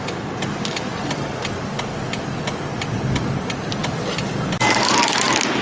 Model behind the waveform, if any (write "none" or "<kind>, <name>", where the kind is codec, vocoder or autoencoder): none